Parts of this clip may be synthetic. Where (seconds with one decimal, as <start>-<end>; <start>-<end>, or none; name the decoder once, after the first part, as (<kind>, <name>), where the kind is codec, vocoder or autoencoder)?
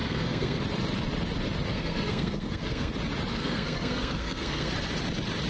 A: 0.0-0.6 (codec, SNAC); 1.7-2.9; 3.3-4.7